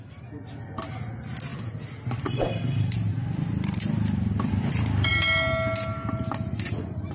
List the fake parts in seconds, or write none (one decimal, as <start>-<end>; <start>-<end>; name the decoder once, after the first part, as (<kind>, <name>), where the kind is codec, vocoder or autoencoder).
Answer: none